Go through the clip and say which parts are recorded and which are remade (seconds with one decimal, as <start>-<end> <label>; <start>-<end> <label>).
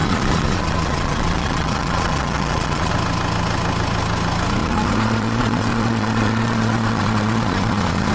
0.0-2.9 remade; 2.9-4.6 recorded; 4.6-8.1 remade